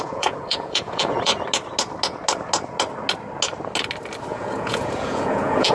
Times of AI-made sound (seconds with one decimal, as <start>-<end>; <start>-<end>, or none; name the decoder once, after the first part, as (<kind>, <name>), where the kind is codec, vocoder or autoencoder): 0.0-1.3 (vocoder, Vocos); 4.3-5.7